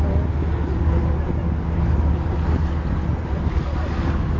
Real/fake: real